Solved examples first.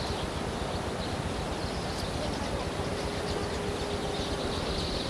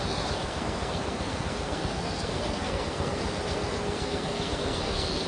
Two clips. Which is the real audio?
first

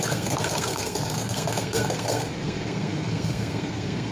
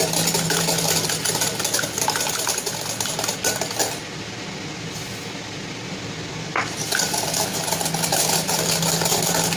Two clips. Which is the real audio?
second